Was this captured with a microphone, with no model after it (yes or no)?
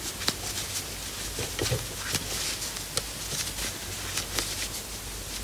yes